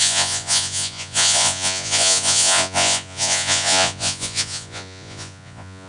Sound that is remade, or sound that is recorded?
remade